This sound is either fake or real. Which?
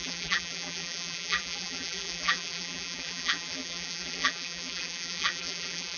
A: fake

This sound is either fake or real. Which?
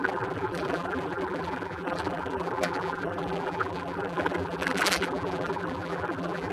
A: fake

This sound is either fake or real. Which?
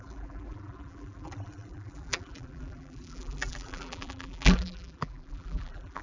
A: fake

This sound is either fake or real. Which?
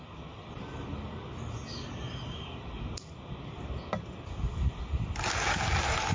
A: real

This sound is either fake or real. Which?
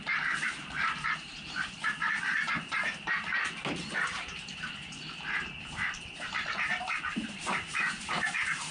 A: fake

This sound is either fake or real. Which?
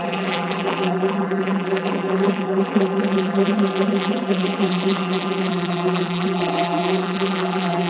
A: fake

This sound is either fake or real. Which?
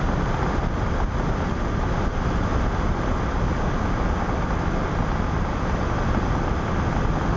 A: real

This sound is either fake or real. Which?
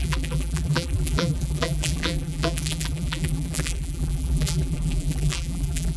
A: fake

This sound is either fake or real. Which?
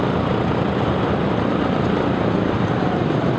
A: real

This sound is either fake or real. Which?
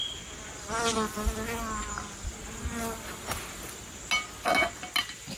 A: real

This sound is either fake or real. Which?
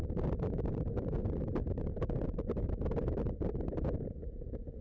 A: fake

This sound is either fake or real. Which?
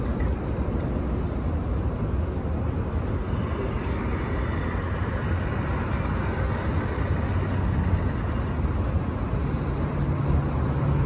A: real